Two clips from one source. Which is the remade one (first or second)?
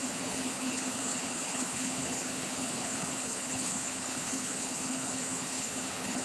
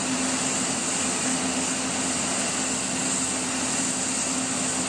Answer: first